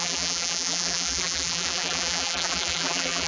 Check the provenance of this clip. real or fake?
fake